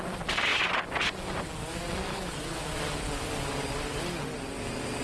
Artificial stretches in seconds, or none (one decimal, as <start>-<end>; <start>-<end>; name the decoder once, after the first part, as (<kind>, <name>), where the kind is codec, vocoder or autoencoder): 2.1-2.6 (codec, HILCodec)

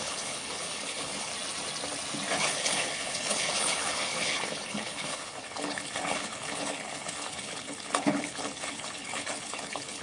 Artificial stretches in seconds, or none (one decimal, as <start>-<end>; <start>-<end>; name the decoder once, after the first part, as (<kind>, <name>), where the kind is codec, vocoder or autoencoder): 0.0-1.3 (codec, HILCodec); 2.3-10.0

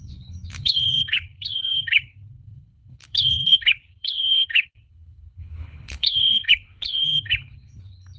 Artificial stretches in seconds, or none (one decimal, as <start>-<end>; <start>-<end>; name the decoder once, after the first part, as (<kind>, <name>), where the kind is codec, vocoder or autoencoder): 0.0-8.2 (codec, HILCodec)

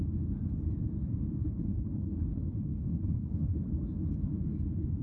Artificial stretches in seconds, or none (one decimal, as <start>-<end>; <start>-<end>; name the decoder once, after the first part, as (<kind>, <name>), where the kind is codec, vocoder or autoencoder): 1.4-3.7 (codec, HILCodec)

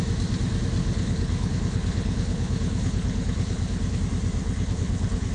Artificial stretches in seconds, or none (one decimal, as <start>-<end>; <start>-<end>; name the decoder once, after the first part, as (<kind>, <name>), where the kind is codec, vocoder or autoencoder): 0.8-4.0 (codec, HILCodec); 4.4-5.3

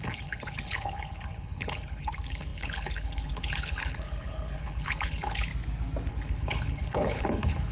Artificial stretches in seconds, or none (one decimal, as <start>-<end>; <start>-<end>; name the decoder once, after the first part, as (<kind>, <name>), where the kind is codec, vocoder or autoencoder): 0.0-5.5 (codec, HILCodec); 6.1-7.7